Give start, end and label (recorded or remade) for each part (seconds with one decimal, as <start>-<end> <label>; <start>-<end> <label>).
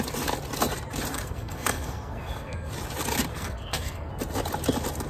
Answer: 0.0-1.1 recorded; 1.1-2.7 remade; 2.7-3.3 recorded; 3.3-4.1 remade; 4.1-5.1 recorded